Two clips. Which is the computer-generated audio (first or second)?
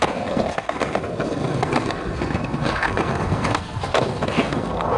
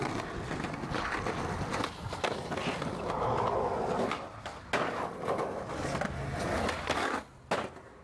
first